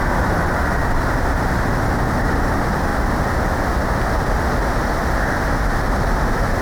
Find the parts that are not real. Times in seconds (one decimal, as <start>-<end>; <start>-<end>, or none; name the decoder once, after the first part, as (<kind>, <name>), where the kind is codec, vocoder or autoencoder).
none